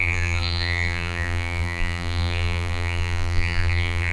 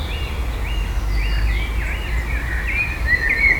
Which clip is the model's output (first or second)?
first